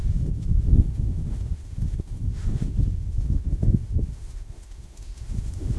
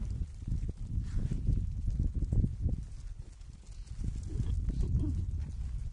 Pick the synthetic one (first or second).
first